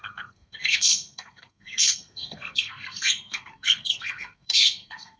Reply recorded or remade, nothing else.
remade